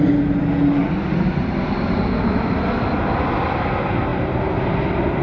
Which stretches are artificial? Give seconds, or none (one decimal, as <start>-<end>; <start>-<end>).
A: none